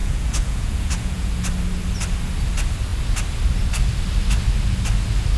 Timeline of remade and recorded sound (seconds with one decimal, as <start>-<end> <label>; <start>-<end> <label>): 0.0-1.3 remade; 1.3-5.4 recorded